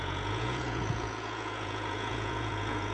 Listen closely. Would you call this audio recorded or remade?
remade